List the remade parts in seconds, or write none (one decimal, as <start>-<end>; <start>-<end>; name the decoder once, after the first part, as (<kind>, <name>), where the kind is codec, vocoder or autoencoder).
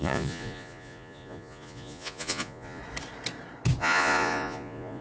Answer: 0.0-2.8 (vocoder, Vocos); 3.8-5.0